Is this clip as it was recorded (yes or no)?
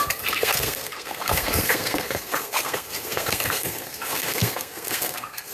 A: no